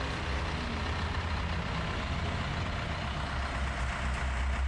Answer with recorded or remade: recorded